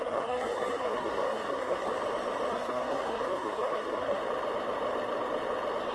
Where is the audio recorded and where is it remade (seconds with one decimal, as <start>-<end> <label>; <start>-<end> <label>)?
0.0-1.9 remade; 1.9-2.5 recorded; 2.5-4.2 remade; 4.2-5.9 recorded